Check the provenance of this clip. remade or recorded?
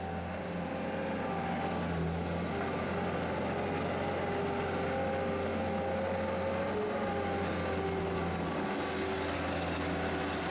recorded